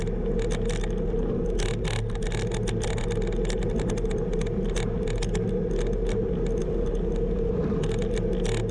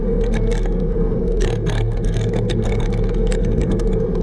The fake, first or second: second